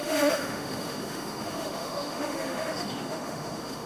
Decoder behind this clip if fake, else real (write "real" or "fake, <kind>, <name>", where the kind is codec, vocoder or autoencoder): fake, autoencoder, DAC-VAE